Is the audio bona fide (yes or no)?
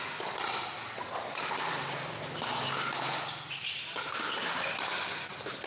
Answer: yes